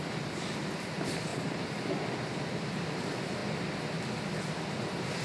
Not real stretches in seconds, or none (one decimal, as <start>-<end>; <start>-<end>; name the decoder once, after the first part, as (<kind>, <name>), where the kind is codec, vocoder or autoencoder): 0.0-3.4 (vocoder, BigVGAN v2); 4.2-5.2